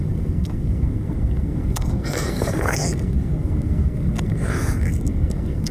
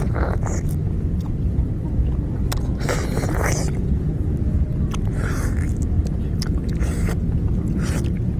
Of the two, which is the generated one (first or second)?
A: first